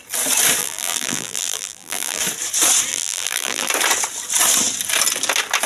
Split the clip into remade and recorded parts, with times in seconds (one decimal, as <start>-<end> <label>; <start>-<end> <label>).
0.0-0.6 recorded; 0.6-2.2 remade; 2.2-2.9 recorded; 2.9-3.7 remade; 3.7-5.7 recorded

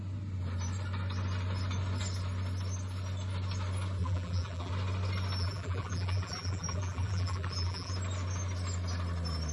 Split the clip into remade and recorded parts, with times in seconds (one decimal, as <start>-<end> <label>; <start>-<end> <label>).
0.0-4.0 recorded; 4.0-4.7 remade; 4.7-5.4 recorded; 5.4-7.9 remade; 7.9-9.5 recorded

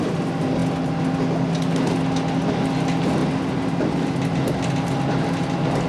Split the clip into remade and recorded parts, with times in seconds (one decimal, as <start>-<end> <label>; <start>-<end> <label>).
0.0-5.9 recorded

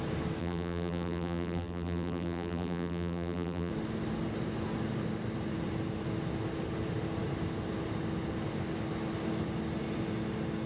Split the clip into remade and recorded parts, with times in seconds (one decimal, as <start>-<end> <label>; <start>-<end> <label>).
0.0-0.4 recorded; 0.4-3.7 remade; 3.7-10.7 recorded

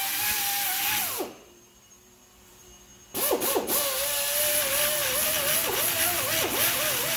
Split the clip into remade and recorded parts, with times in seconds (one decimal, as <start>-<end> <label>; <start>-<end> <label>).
0.0-2.9 remade; 2.9-4.6 recorded; 4.6-7.2 remade

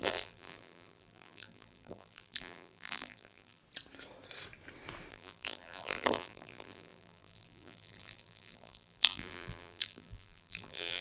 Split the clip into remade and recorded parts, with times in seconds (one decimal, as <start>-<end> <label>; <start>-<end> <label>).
0.0-3.6 remade; 3.6-5.1 recorded; 5.1-11.0 remade

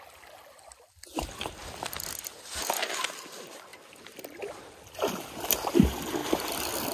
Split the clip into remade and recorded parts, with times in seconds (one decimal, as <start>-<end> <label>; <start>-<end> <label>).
0.0-1.6 recorded; 1.6-2.3 remade; 2.3-3.7 recorded; 3.7-4.9 remade; 4.9-6.2 recorded; 6.2-6.9 remade